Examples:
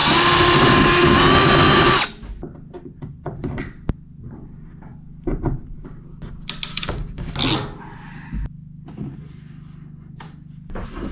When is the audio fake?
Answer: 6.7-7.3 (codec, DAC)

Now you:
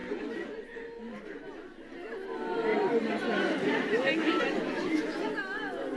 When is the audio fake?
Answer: 0.0-1.2 (vocoder, BigVGAN v2); 2.7-4.4